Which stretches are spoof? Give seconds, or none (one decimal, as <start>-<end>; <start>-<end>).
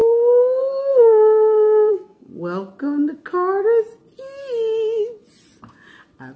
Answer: 0.0-2.3